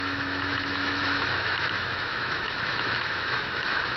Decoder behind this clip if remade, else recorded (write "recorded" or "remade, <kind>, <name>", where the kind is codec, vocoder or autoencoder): remade, autoencoder, DAC-VAE